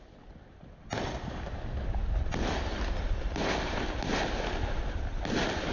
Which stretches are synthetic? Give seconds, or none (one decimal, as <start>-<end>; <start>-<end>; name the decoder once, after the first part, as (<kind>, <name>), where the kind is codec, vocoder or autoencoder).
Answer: none